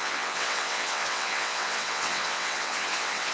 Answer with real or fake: fake